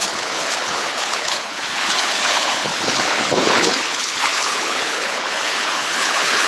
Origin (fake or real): fake